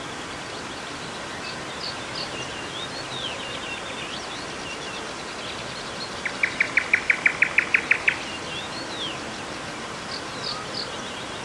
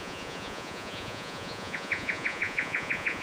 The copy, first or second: second